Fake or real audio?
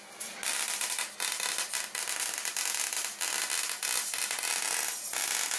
real